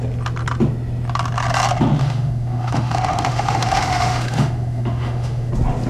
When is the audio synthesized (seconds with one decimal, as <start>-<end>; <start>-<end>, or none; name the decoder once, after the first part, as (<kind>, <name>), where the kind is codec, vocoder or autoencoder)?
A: 2.0-5.5 (autoencoder, DAC-VAE)